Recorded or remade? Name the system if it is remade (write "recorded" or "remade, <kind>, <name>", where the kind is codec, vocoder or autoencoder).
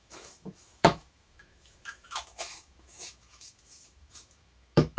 remade, autoencoder, DAC-VAE